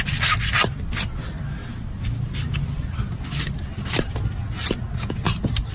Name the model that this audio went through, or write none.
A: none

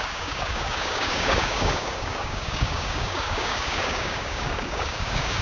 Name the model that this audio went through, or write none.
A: codec, DAC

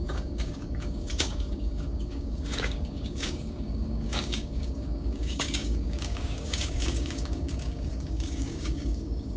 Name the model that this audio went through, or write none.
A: codec, DAC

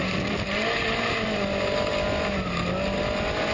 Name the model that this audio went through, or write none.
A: none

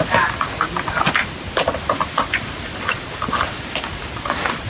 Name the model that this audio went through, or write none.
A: none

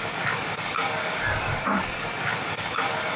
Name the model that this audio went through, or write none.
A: codec, DAC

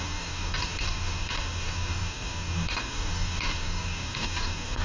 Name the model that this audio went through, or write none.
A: codec, DAC